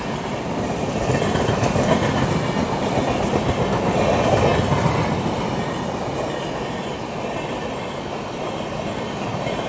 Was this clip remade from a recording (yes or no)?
no